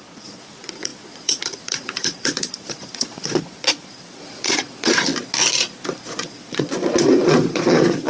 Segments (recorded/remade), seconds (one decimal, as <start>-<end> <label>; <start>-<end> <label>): 0.0-5.1 remade; 5.1-6.1 recorded; 6.1-8.1 remade